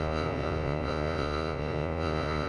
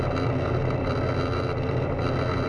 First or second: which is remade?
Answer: first